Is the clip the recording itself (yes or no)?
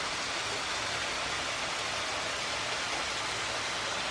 yes